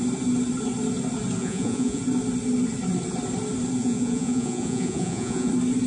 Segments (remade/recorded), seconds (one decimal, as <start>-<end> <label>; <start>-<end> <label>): 0.0-1.4 recorded; 1.4-2.0 remade; 2.0-3.8 recorded; 3.8-5.5 remade; 5.5-5.9 recorded